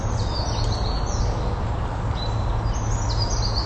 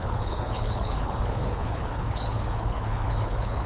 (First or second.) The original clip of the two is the first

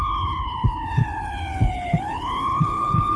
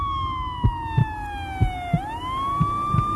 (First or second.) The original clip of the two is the second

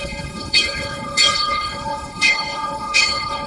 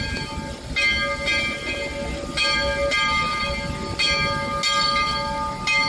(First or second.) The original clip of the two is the second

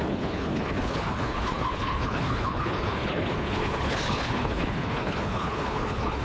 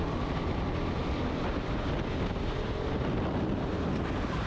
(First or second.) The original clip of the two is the second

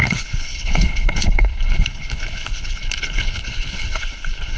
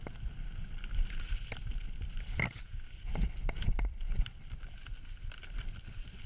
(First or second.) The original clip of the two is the second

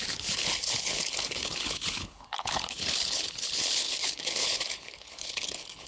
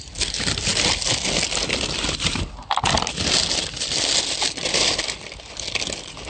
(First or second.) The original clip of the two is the second